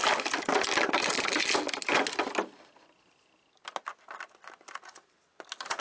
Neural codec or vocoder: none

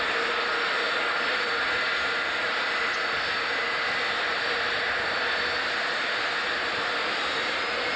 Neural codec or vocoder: none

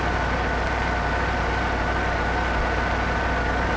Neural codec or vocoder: none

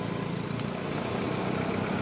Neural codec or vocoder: none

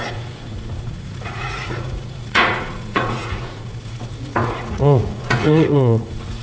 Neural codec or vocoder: vocoder, Vocos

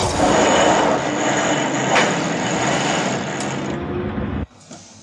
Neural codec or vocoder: none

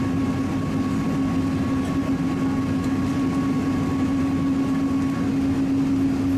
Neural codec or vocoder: none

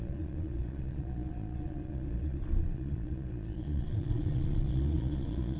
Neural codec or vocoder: vocoder, Vocos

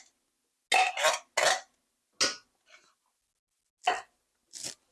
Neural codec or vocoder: none